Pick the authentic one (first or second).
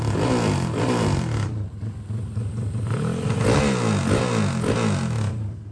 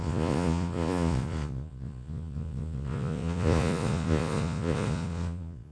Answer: first